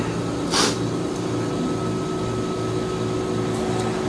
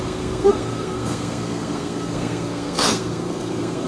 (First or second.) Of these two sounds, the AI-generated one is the second